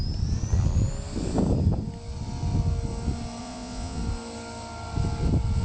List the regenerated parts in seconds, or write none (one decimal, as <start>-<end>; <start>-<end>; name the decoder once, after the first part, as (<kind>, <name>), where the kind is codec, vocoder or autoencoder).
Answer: 3.4-4.0 (vocoder, Vocos)